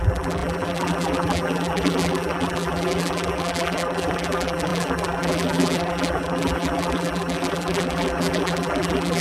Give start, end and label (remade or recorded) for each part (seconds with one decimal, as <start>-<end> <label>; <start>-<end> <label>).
0.0-9.2 remade